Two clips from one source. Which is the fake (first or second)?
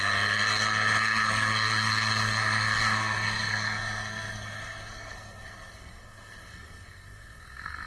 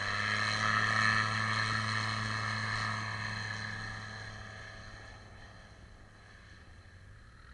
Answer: first